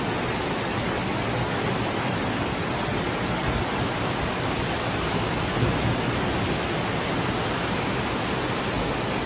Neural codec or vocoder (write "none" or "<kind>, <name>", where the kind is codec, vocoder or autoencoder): none